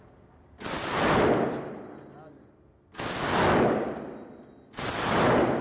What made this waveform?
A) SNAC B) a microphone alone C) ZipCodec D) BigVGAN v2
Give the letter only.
B